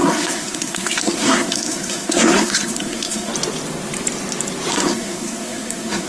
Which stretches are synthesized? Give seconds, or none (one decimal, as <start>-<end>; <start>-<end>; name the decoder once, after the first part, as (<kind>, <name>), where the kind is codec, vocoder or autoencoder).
0.0-3.3 (codec, SNAC); 4.7-6.1